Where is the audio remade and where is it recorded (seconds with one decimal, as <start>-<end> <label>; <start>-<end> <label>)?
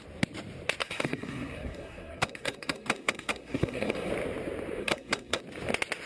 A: 0.0-0.8 recorded; 0.8-4.1 remade; 4.1-4.8 recorded; 4.8-5.4 remade; 5.4-6.1 recorded